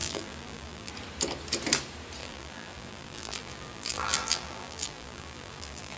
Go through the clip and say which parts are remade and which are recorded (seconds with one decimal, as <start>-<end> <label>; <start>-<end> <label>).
0.0-0.9 remade; 0.9-2.2 recorded; 2.2-6.0 remade

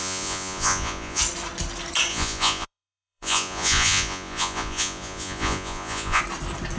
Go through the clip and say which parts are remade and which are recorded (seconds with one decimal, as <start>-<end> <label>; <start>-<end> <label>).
0.0-1.2 remade; 1.2-2.1 recorded; 2.1-6.2 remade; 6.2-6.8 recorded

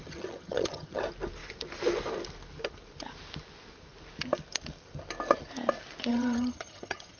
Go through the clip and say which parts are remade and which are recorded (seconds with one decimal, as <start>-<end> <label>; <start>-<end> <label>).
0.0-1.0 remade; 1.0-6.1 recorded; 6.1-7.2 remade

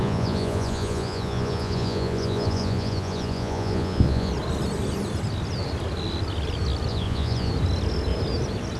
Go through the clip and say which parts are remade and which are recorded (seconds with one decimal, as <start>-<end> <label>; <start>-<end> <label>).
0.0-4.3 remade; 4.3-6.9 recorded; 6.9-7.5 remade; 7.5-8.8 recorded

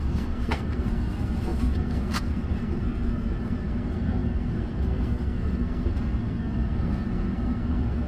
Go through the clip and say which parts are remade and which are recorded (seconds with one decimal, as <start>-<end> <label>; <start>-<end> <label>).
0.0-8.1 remade

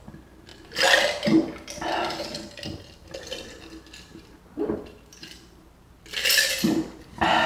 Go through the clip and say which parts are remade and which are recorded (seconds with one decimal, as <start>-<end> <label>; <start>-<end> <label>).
0.0-4.1 recorded; 4.1-6.0 remade; 6.0-7.5 recorded

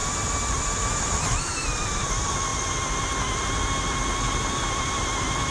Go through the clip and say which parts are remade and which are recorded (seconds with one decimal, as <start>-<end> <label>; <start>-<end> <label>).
0.0-5.5 recorded

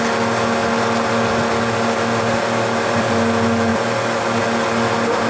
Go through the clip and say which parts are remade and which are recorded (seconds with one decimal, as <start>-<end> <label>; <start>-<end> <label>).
0.0-5.3 recorded